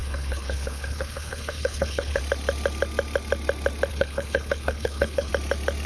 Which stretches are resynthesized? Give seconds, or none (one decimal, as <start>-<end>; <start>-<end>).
0.0-2.2; 3.9-5.3